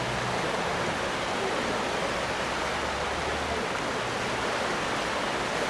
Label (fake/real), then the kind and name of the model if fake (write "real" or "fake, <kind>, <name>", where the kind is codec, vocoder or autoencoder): real